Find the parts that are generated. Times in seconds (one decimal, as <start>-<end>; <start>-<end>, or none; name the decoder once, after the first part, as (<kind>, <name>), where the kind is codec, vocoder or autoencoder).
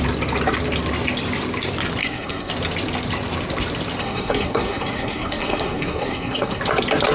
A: 2.0-2.5 (codec, SNAC); 4.0-6.6